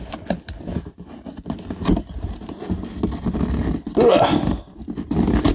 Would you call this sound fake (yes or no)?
no